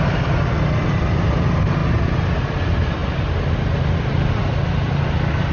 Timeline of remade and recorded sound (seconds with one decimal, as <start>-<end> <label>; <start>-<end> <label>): 0.0-5.5 recorded